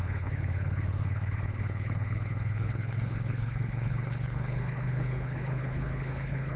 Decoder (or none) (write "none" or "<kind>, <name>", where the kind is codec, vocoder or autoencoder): codec, HILCodec